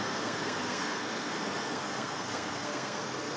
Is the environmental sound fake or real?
fake